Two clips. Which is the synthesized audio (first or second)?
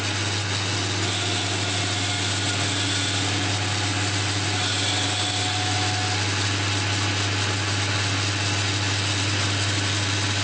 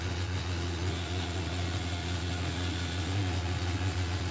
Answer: second